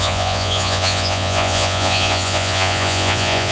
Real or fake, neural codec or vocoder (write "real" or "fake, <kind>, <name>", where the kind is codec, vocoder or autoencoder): fake, vocoder, Vocos